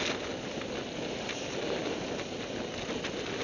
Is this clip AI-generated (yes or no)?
no